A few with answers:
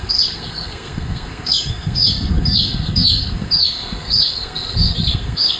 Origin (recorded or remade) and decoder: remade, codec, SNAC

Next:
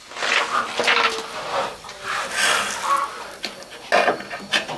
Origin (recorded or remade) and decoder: recorded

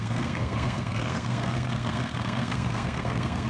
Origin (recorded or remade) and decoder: remade, codec, SNAC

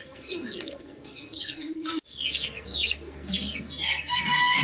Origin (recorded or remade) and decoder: remade, codec, SNAC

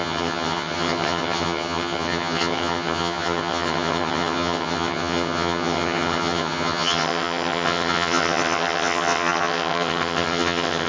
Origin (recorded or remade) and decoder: remade, vocoder, HiFi-GAN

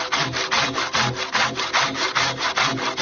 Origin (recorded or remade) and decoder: recorded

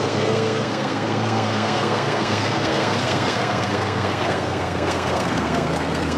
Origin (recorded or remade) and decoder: remade, codec, SNAC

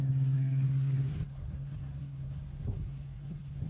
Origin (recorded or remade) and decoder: remade, codec, SNAC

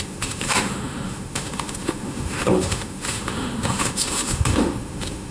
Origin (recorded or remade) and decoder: remade, autoencoder, DAC-VAE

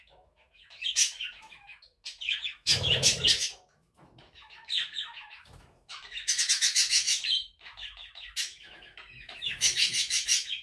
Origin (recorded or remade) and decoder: remade, autoencoder, DAC-VAE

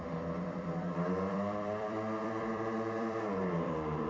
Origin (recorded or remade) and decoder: remade, vocoder, BigVGAN v2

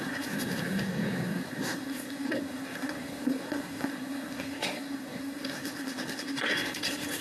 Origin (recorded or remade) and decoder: remade, codec, SNAC